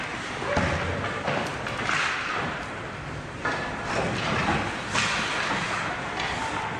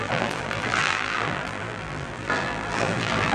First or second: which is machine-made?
second